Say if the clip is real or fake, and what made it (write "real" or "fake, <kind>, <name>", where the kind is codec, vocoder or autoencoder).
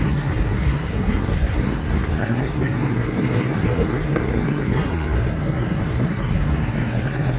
fake, codec, SNAC